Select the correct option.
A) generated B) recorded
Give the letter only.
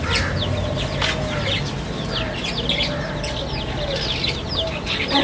B